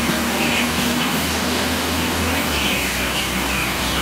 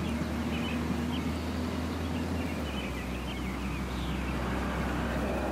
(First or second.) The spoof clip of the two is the first